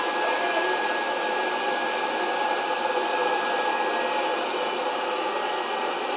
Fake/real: real